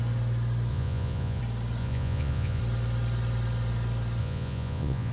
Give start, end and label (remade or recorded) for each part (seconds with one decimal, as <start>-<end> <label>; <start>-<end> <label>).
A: 0.0-0.7 recorded; 0.7-1.4 remade; 1.4-1.8 recorded; 1.8-2.6 remade; 2.6-4.2 recorded; 4.2-5.1 remade